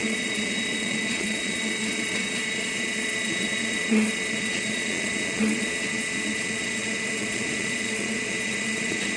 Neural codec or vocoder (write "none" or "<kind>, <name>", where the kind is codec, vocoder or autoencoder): vocoder, Vocos